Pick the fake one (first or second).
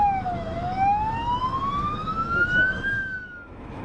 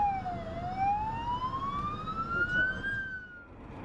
first